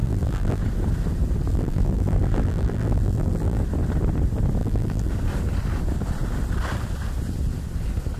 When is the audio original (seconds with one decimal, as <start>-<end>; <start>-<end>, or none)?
0.6-1.5; 3.6-4.6; 5.1-8.2